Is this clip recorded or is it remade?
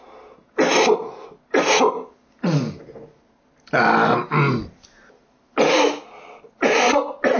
recorded